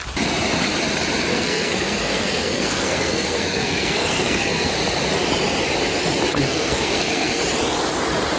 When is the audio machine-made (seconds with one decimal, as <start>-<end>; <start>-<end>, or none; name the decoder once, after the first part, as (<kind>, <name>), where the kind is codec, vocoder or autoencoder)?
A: 1.3-4.7 (codec, SNAC); 6.3-7.4